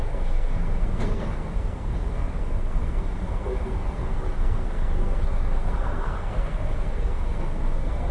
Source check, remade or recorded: remade